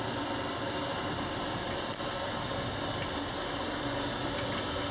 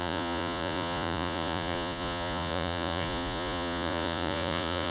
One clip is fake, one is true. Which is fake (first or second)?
second